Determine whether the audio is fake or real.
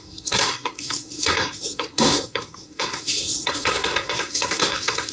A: fake